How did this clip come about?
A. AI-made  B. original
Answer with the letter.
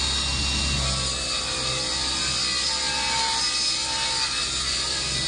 B